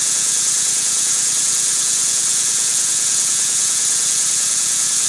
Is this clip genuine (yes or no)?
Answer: no